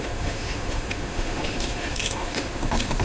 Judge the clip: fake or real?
fake